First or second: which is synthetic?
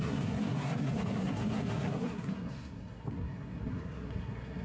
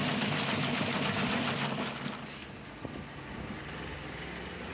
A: first